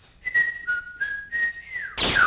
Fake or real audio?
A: real